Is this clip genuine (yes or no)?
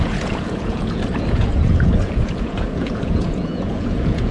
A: no